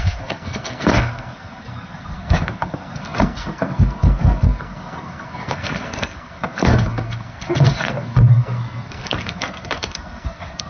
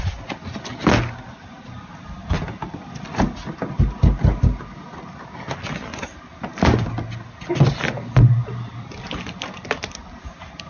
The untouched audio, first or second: second